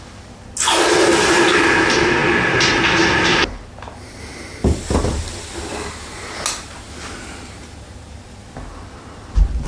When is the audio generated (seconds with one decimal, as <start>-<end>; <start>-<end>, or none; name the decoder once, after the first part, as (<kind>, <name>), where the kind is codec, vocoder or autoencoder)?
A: none